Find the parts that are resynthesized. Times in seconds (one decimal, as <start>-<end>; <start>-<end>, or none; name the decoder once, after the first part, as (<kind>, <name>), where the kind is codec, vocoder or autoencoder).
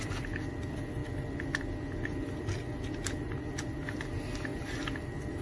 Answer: none